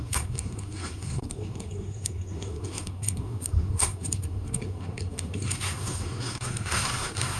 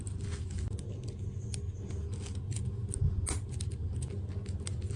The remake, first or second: first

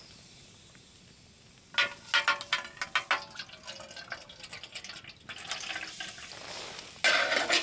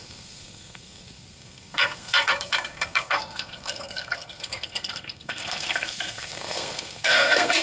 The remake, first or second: second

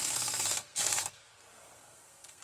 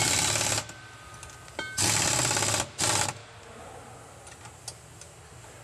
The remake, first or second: first